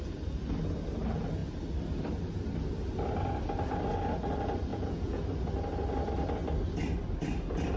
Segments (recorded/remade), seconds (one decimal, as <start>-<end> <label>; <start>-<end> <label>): 0.0-4.7 recorded; 4.7-5.2 remade; 5.2-7.8 recorded

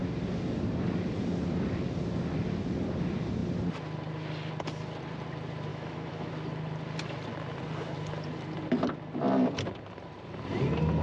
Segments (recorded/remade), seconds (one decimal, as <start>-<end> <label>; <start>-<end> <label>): 0.0-5.7 recorded; 5.7-6.3 remade; 6.3-11.0 recorded

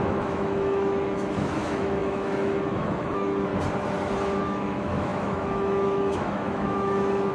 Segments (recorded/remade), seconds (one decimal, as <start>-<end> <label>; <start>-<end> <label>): 0.0-3.5 remade; 3.5-4.4 recorded; 4.4-7.3 remade

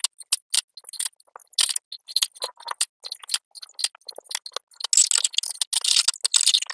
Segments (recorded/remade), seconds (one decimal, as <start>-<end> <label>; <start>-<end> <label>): 0.0-6.7 recorded

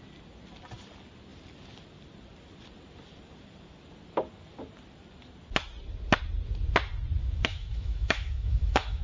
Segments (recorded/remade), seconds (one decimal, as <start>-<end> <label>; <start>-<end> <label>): 0.0-7.5 recorded; 7.5-9.0 remade

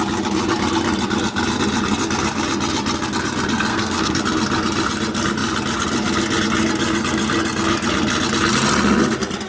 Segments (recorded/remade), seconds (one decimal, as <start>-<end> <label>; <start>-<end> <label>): 0.0-3.7 recorded; 3.7-4.2 remade; 4.2-9.5 recorded